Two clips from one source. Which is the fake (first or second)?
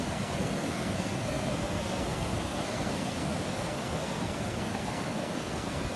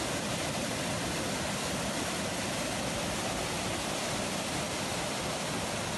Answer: first